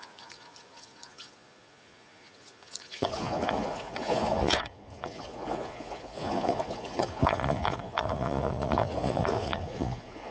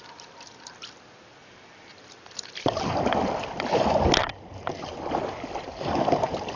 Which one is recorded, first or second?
second